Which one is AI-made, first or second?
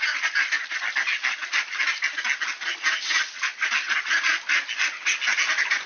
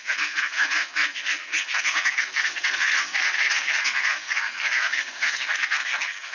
second